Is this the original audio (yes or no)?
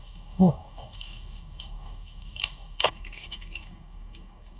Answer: no